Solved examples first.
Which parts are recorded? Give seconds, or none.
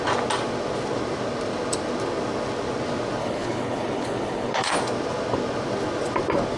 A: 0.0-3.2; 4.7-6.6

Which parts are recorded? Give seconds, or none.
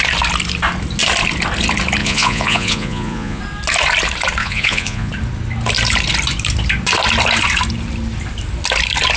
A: 0.0-2.0; 3.4-4.4; 5.1-9.2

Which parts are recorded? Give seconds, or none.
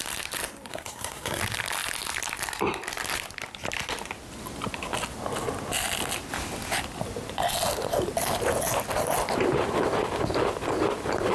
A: 0.0-0.7; 1.4-11.3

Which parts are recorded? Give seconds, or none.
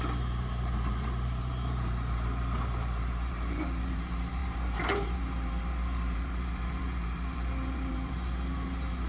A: none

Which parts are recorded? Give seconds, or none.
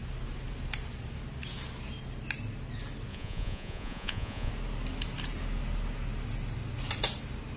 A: 0.0-3.1; 4.5-7.6